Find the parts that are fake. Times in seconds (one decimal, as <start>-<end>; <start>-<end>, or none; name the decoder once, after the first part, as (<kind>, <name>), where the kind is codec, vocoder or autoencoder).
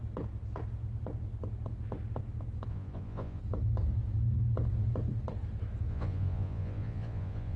2.7-3.4 (vocoder, Vocos); 5.9-7.6